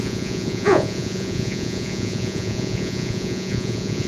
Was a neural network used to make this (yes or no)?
yes